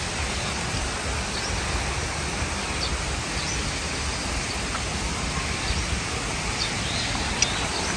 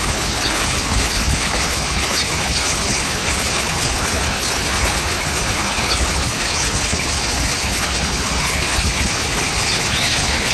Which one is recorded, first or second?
first